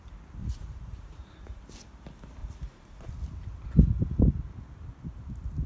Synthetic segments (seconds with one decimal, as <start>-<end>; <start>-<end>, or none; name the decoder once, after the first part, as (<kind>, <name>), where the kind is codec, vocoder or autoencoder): 0.4-1.6 (vocoder, Vocos); 2.4-3.1